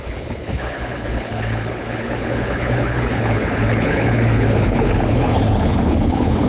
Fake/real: fake